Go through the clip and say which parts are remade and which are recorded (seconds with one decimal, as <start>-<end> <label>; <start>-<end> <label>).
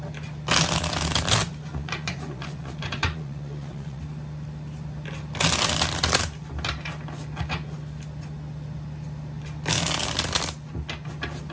0.0-1.7 recorded; 1.7-4.0 remade; 4.0-11.5 recorded